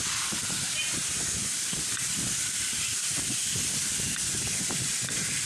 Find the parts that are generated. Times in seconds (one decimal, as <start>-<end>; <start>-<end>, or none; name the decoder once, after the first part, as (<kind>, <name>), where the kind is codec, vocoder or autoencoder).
none

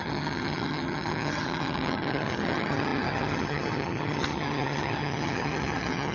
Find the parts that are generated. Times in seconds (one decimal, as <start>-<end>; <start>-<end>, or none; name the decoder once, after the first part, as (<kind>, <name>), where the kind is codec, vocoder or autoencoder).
0.0-6.1 (vocoder, HiFi-GAN)

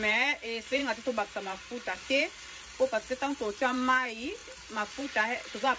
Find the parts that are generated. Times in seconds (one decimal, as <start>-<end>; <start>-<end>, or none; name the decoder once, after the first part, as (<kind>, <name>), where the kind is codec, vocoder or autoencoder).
0.0-5.8 (vocoder, BigVGAN v2)

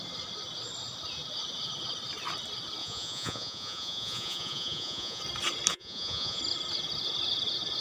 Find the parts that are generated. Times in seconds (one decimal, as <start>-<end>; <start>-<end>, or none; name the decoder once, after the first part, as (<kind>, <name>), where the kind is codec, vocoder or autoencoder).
2.8-5.2 (vocoder, Vocos); 5.7-6.4

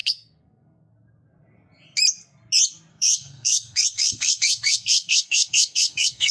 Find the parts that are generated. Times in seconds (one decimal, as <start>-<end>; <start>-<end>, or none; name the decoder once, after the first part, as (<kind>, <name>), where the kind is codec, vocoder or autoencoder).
0.0-0.9 (codec, SNAC); 2.9-6.3

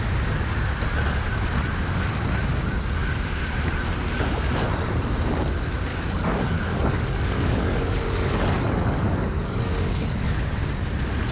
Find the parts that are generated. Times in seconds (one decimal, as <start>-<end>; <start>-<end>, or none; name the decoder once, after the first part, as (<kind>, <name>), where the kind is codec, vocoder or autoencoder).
5.9-10.4 (codec, DAC)

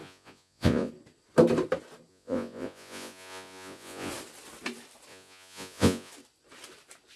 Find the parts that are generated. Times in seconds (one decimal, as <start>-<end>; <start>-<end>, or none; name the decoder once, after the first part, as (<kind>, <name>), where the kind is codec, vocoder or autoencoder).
0.0-0.9 (vocoder, Vocos); 2.1-4.1; 5.1-6.1

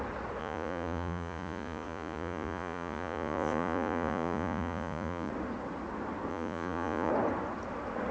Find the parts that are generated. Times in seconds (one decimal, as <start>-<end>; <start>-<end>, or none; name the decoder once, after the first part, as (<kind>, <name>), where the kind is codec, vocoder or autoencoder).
0.4-5.3 (vocoder, Vocos); 6.3-7.1